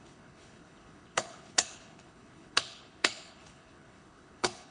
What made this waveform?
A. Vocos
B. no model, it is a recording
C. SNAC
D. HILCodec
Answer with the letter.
D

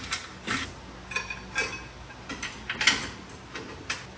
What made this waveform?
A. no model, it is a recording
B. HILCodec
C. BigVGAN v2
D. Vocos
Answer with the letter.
A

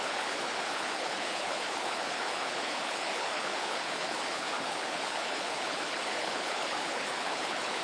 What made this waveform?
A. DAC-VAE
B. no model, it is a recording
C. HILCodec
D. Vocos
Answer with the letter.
C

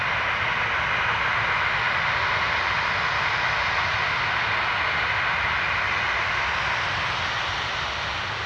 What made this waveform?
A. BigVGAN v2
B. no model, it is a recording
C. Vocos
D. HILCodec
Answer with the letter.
B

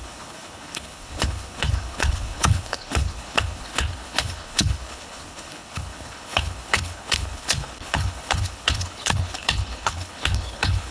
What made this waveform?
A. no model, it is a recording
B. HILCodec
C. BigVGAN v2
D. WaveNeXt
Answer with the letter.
B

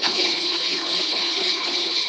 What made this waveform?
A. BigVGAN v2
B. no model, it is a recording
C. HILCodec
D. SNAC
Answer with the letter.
C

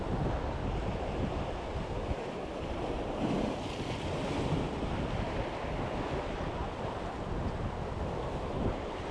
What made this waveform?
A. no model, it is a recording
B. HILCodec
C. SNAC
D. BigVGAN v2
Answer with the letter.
A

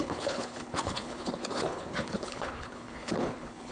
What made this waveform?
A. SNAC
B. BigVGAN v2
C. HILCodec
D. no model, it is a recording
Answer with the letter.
C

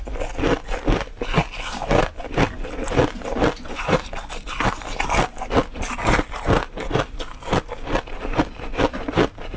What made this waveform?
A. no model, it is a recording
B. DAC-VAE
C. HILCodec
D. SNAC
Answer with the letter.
A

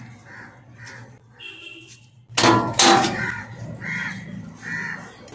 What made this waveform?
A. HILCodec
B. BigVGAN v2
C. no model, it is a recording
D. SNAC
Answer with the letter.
C